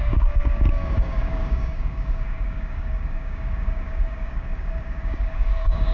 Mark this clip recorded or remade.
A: remade